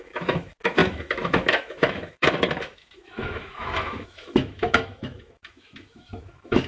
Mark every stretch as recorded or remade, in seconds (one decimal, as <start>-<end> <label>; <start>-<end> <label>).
0.0-6.7 remade